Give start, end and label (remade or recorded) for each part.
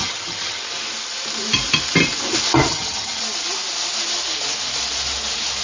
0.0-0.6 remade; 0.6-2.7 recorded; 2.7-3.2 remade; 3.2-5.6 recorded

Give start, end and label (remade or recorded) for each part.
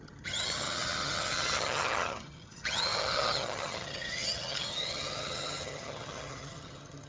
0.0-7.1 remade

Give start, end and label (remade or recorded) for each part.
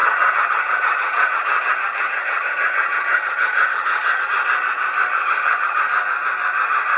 0.0-4.2 remade; 4.2-5.2 recorded; 5.2-5.8 remade; 5.8-7.0 recorded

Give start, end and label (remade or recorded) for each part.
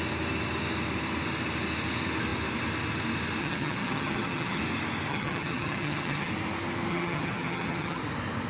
0.0-3.4 recorded; 3.4-4.6 remade; 4.6-5.1 recorded; 5.1-6.3 remade; 6.3-6.9 recorded; 6.9-8.0 remade; 8.0-8.5 recorded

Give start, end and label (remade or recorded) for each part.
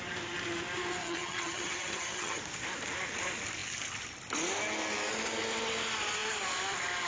0.0-1.0 recorded; 1.0-2.4 remade; 2.4-7.1 recorded